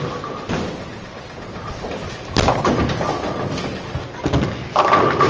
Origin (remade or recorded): recorded